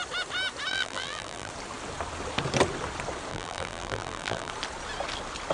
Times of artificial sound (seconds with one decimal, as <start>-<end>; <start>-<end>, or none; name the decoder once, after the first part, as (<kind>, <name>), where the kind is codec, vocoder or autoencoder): 0.7-1.5 (vocoder, BigVGAN v2); 3.3-4.5